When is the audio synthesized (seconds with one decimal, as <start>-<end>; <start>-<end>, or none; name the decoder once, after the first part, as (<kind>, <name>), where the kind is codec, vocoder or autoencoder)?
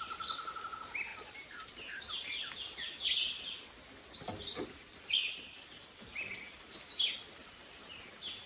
1.1-2.0 (vocoder, BigVGAN v2)